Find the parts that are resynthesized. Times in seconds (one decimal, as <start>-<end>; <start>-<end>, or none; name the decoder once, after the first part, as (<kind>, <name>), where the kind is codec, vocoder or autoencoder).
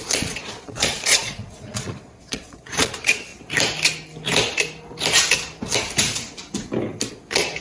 0.0-3.3 (vocoder, Vocos); 7.1-7.6